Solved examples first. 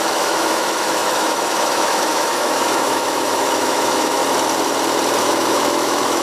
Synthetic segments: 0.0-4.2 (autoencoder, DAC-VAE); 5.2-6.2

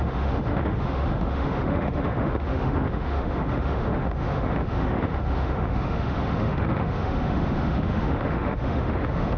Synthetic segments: 0.0-9.4 (autoencoder, DAC-VAE)

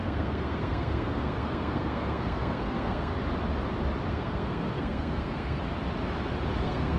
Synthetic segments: 0.0-3.1 (codec, SNAC); 4.1-5.6; 6.6-7.0

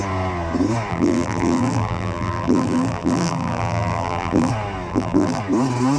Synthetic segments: 0.9-4.5 (vocoder, BigVGAN v2); 4.9-5.4

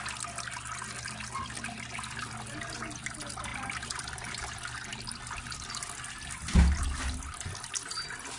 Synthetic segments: none